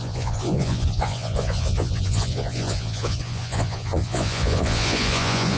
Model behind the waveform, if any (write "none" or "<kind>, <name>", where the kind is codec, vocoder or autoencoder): vocoder, Vocos